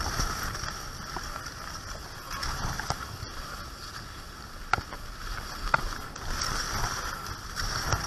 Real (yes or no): yes